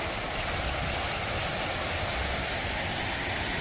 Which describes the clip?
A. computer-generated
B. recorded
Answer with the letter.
B